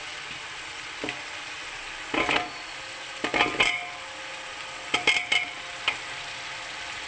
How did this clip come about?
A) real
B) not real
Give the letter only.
A